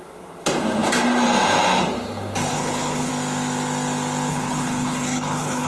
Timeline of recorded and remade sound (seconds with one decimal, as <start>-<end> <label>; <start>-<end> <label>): 0.0-2.5 recorded; 2.5-3.1 remade; 3.1-4.3 recorded; 4.3-5.7 remade